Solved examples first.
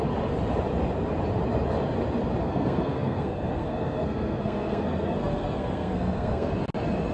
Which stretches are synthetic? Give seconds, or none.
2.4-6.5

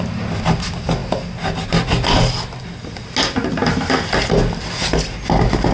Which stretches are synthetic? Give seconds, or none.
none

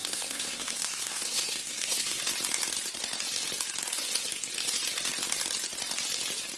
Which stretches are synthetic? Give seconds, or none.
0.0-2.2

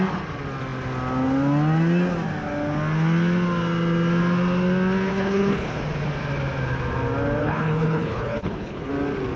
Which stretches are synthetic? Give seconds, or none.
5.1-5.8; 7.4-8.9

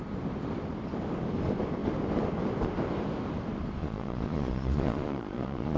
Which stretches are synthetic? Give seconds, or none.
3.8-5.8

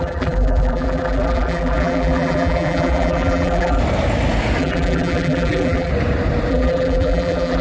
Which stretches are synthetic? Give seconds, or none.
0.0-3.8; 4.6-5.9; 6.5-7.6